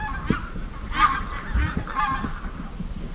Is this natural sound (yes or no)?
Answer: yes